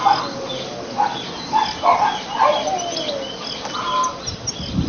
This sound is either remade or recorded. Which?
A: recorded